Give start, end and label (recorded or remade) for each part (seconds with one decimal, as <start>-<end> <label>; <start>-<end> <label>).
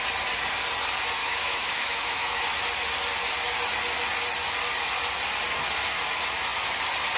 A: 0.0-1.2 recorded; 1.2-2.4 remade; 2.4-7.2 recorded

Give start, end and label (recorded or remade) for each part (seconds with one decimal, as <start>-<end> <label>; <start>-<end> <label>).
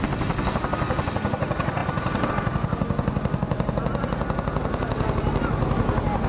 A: 0.0-6.3 recorded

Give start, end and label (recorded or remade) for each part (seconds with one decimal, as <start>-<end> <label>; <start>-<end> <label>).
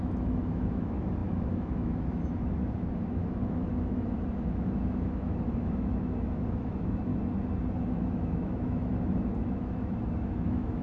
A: 0.0-7.1 remade; 7.1-7.8 recorded; 7.8-10.8 remade